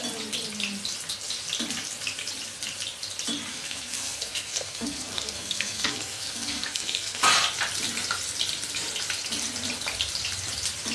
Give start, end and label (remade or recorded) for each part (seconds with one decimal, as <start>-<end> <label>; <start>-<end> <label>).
0.0-3.5 recorded; 3.5-7.2 remade; 7.2-10.9 recorded